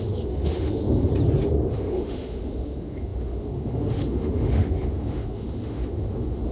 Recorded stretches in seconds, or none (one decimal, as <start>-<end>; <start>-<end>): 1.1-1.7